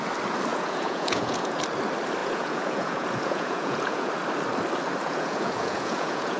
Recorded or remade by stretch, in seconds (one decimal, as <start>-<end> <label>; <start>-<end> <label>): 0.0-0.5 recorded; 0.5-1.6 remade; 1.6-2.2 recorded; 2.2-4.1 remade; 4.1-5.0 recorded; 5.0-6.4 remade